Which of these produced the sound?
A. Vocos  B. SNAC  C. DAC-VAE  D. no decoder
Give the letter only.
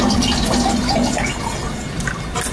D